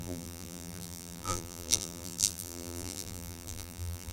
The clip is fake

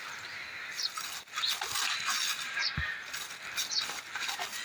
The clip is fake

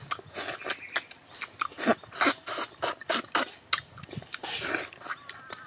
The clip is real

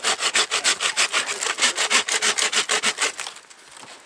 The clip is real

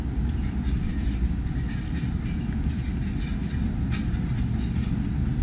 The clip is real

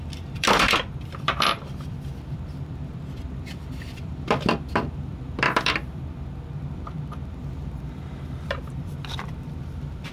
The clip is fake